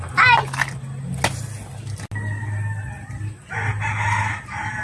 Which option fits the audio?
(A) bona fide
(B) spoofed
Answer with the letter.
A